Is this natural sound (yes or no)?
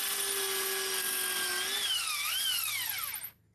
yes